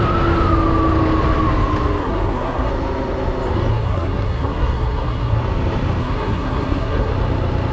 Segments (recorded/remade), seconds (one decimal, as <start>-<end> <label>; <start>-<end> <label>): 0.0-2.0 recorded; 2.0-2.7 remade; 2.7-3.7 recorded; 3.7-5.4 remade; 5.4-6.0 recorded; 6.0-7.1 remade; 7.1-7.7 recorded